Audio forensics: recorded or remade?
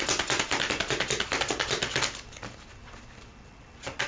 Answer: recorded